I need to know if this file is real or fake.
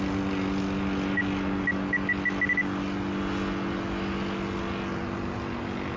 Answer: real